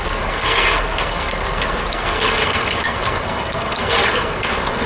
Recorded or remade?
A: remade